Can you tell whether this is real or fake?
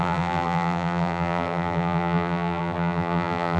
fake